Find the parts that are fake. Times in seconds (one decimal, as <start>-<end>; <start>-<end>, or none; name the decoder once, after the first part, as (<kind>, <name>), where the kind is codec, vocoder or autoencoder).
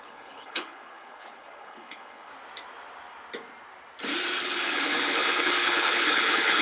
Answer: 0.0-2.3 (codec, HILCodec); 4.4-6.6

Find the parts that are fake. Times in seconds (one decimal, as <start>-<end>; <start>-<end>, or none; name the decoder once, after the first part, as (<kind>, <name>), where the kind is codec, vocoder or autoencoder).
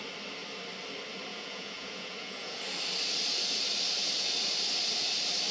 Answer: 1.3-2.6 (vocoder, Vocos)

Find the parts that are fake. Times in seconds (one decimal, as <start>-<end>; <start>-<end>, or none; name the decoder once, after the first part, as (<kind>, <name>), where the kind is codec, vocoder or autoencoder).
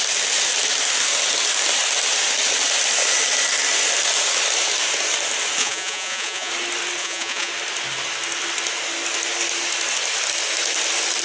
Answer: 5.6-6.5 (vocoder, Vocos); 7.0-7.5